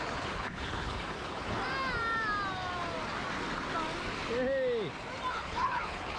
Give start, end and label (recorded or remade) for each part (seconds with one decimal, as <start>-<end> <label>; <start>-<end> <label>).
0.0-1.6 remade; 1.6-5.3 recorded; 5.3-6.2 remade